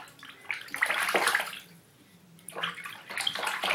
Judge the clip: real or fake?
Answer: real